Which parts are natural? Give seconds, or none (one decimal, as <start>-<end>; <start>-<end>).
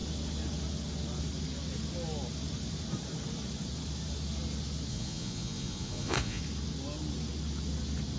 0.0-4.9; 6.4-8.2